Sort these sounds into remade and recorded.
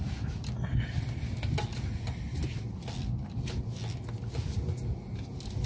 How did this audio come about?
recorded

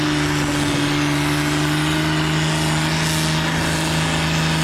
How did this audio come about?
recorded